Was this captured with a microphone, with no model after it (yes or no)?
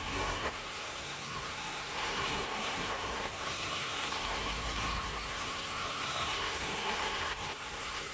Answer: no